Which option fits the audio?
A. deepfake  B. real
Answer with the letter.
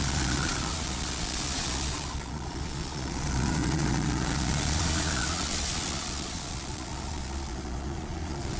A